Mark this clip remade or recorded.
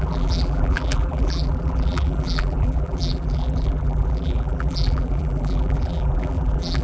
remade